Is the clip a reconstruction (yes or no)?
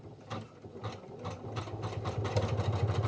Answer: no